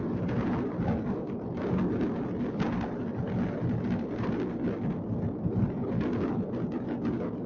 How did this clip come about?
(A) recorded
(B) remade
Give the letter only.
A